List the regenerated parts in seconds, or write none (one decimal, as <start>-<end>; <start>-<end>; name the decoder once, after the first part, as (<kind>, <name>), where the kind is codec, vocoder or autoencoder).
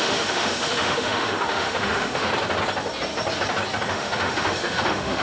0.0-2.3 (autoencoder, DAC-VAE); 3.9-5.2